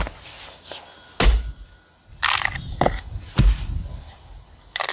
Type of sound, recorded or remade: recorded